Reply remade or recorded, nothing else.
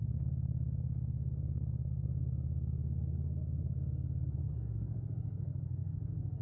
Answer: remade